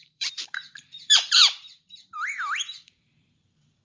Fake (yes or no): yes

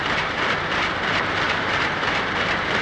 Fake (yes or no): yes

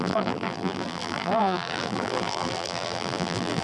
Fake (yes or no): yes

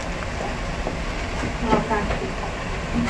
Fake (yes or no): no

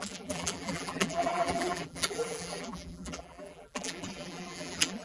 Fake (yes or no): yes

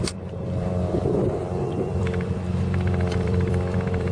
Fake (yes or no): yes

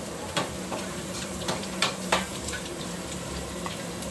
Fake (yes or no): yes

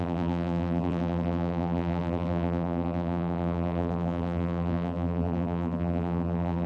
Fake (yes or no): yes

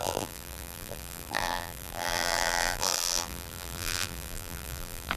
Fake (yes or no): yes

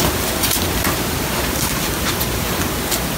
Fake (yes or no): no